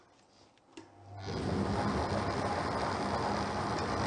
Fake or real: real